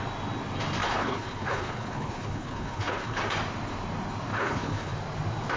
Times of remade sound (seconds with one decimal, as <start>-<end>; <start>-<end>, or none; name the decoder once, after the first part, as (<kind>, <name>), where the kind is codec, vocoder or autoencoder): 0.8-3.2 (codec, HILCodec); 4.3-4.9